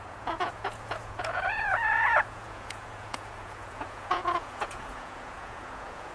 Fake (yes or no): yes